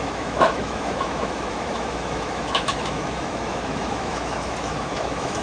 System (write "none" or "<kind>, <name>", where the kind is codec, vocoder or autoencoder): autoencoder, DAC-VAE